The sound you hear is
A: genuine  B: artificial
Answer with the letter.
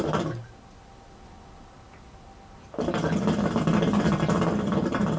A